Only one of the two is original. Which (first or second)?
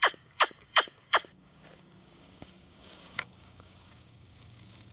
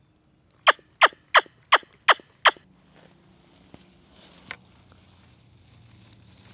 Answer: second